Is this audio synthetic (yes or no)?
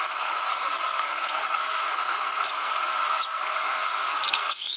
yes